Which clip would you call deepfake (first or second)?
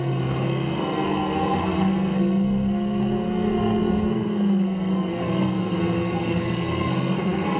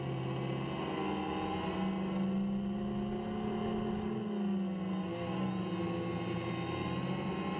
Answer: first